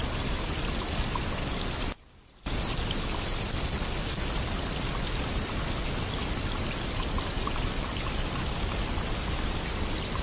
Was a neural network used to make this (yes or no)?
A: no